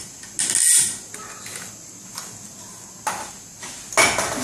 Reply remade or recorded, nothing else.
recorded